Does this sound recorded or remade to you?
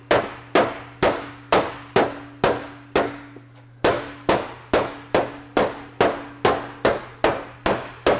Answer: recorded